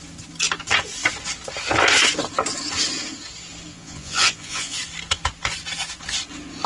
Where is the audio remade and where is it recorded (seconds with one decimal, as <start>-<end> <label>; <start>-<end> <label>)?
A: 0.0-3.7 recorded; 3.7-4.8 remade; 4.8-6.7 recorded